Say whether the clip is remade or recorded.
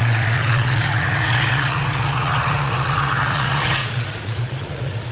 remade